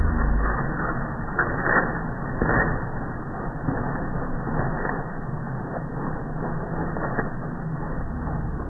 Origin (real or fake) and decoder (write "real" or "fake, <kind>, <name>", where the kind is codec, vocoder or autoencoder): real